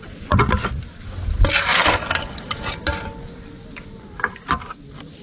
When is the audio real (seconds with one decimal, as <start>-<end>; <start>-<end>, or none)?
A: 0.0-5.2